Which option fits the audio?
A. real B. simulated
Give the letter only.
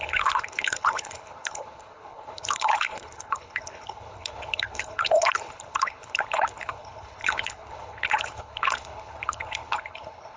B